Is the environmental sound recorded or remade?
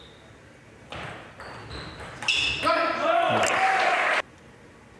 recorded